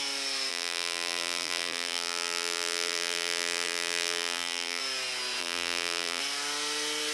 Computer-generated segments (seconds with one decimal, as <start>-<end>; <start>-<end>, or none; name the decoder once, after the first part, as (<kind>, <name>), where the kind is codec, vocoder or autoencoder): 0.5-4.8 (vocoder, BigVGAN v2); 5.4-6.2